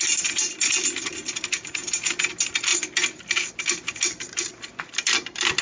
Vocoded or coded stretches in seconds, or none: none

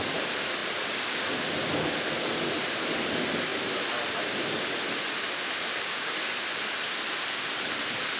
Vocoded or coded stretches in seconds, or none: 5.7-6.3 (codec, DAC)

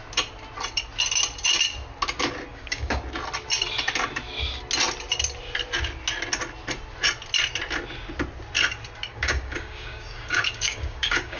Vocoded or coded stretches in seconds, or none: 2.5-3.0 (codec, DAC); 9.1-11.4